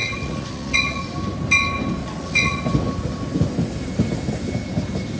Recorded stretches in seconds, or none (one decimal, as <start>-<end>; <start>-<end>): 1.0-2.0; 2.6-5.2